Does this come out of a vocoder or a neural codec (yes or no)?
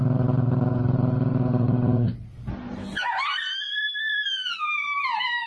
no